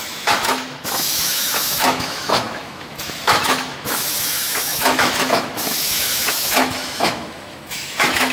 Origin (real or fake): fake